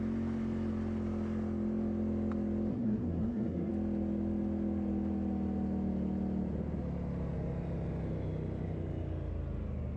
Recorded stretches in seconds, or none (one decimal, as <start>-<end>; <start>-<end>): 0.0-2.7; 3.7-10.0